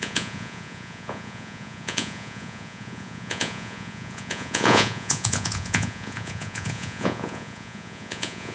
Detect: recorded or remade remade